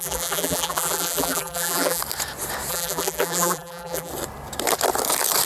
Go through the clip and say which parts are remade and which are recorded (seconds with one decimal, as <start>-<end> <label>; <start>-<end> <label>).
0.0-2.0 remade; 2.0-2.7 recorded; 2.7-4.1 remade; 4.1-5.5 recorded